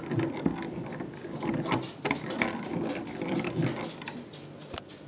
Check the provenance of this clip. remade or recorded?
recorded